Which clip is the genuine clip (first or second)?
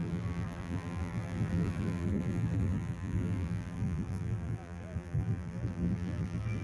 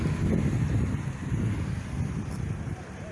second